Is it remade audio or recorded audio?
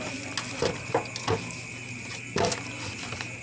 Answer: recorded